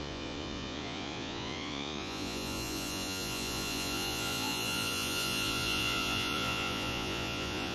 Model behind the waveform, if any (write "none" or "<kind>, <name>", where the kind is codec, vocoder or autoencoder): vocoder, Vocos